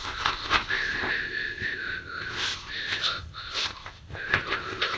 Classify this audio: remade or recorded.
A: remade